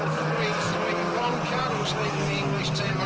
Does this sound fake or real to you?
real